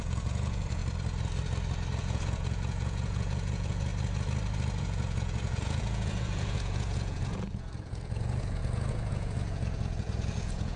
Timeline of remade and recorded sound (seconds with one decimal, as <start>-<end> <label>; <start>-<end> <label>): 0.0-0.8 remade; 0.8-2.0 recorded; 2.0-3.9 remade; 3.9-4.8 recorded; 4.8-10.8 remade